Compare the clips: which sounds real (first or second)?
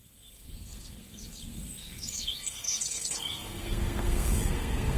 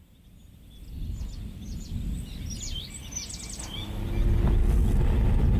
second